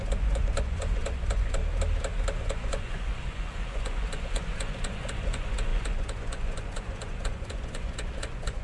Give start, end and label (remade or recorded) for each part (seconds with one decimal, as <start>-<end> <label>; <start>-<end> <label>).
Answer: 0.0-1.6 remade; 1.6-2.4 recorded; 2.4-8.6 remade